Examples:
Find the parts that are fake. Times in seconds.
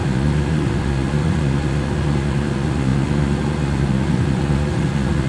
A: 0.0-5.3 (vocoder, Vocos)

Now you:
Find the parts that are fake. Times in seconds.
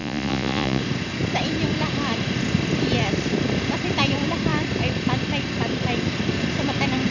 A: 0.0-0.8 (vocoder, Vocos)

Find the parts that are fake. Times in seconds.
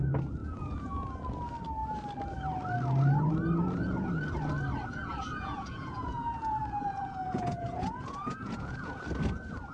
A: 0.4-1.1 (vocoder, Vocos); 5.3-9.0